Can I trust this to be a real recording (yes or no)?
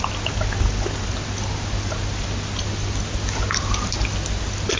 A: yes